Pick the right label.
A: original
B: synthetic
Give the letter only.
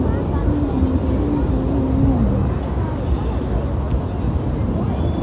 A